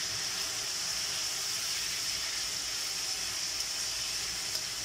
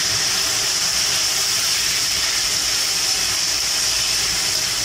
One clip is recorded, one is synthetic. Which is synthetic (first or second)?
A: second